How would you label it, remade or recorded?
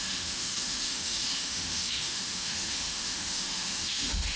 remade